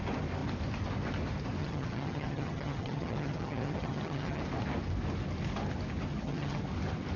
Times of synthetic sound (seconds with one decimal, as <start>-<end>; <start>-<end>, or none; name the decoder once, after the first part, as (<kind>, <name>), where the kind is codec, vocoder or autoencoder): 1.6-4.4 (vocoder, HiFi-GAN); 6.1-6.6